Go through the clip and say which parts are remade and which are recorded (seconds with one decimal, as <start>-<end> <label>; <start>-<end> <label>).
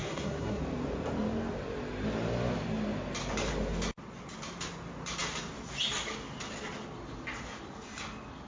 0.0-0.6 remade; 0.6-8.5 recorded